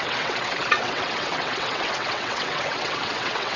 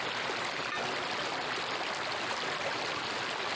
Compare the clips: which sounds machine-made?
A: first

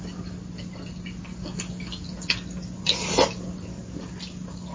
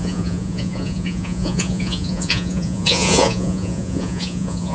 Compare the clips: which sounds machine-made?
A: second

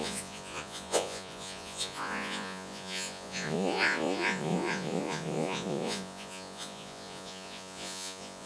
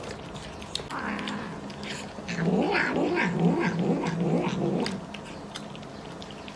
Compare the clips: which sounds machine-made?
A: first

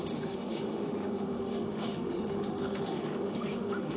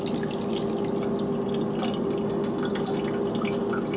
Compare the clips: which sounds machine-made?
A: first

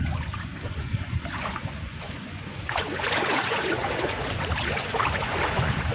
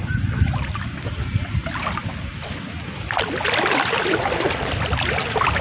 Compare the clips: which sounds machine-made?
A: first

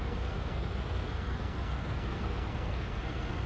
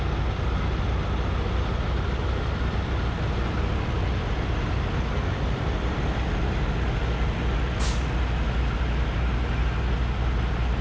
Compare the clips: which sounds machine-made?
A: first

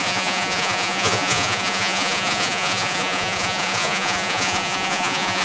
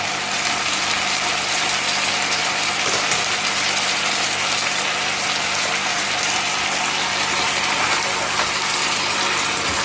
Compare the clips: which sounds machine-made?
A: first